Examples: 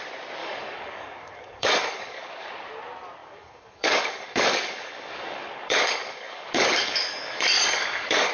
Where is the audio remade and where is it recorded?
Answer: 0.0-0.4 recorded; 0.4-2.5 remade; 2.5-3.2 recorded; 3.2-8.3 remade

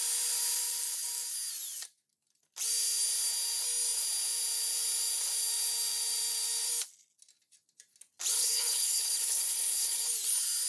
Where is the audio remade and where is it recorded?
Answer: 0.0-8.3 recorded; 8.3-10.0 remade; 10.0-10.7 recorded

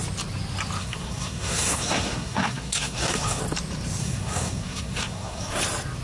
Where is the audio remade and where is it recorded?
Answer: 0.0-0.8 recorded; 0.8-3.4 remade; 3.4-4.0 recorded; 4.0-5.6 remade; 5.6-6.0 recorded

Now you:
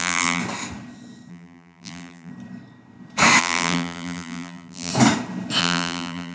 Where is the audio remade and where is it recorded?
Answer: 0.0-0.4 remade; 0.4-1.3 recorded; 1.3-2.3 remade; 2.3-3.4 recorded; 3.4-4.9 remade; 4.9-5.6 recorded; 5.6-6.3 remade